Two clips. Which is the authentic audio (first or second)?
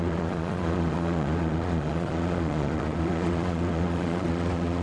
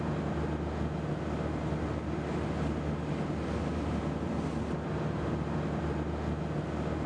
second